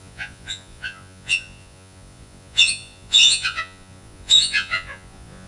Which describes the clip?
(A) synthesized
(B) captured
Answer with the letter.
A